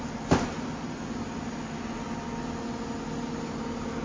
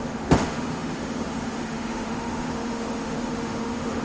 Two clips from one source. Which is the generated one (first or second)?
second